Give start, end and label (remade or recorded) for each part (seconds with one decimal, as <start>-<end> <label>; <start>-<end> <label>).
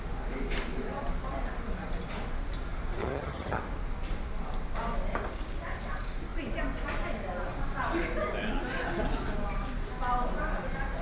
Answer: 0.0-3.0 recorded; 3.0-3.6 remade; 3.6-11.0 recorded